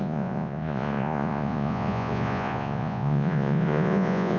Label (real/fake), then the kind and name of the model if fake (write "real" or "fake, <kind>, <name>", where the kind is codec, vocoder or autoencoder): fake, vocoder, Vocos